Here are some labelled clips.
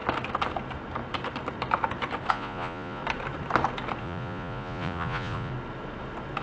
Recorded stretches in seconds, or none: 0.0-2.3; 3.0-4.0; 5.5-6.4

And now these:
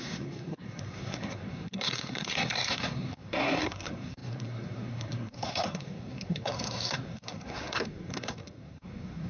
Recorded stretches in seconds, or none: none

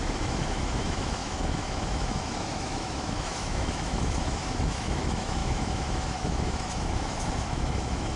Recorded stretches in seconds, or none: none